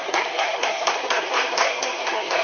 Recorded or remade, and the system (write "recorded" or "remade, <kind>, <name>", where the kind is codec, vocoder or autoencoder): remade, codec, SNAC